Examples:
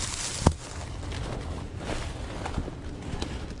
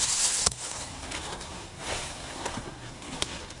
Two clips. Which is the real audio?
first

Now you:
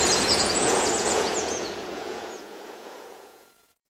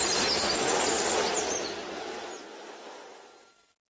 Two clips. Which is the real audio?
second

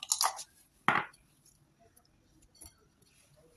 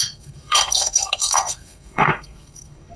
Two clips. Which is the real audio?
first